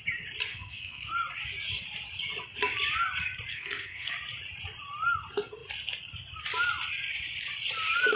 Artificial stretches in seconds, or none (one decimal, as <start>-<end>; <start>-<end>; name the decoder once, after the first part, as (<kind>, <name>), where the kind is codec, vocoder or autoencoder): 0.5-1.1 (codec, SNAC); 3.5-4.1